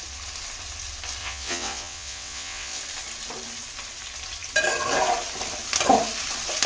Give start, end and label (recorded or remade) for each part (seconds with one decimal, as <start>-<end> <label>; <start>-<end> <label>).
0.0-1.2 recorded; 1.2-2.8 remade; 2.8-6.7 recorded